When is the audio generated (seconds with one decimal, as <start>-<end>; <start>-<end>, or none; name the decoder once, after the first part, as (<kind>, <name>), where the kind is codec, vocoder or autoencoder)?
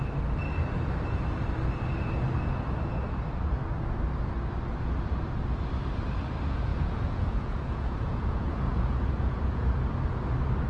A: 6.7-9.7 (vocoder, Vocos)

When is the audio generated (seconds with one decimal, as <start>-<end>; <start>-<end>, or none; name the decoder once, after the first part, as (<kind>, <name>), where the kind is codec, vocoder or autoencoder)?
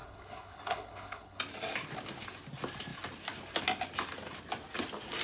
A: 0.0-1.4 (codec, HILCodec)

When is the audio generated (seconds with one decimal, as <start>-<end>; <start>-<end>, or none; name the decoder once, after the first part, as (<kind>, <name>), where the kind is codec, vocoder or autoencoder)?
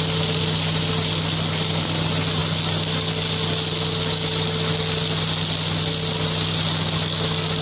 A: none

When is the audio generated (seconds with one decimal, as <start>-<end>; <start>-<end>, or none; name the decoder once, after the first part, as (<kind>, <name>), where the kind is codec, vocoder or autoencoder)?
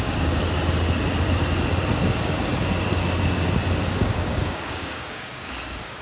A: 0.0-0.4 (codec, DAC); 4.0-6.0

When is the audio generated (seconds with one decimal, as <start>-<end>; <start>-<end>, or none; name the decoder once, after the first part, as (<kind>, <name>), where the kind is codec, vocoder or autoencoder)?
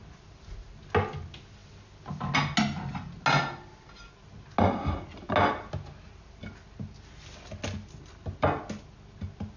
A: none